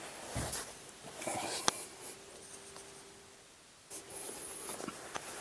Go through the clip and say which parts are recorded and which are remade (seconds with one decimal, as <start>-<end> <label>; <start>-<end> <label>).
0.0-5.4 recorded